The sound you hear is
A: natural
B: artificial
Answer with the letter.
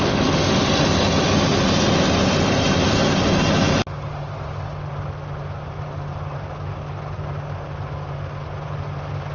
A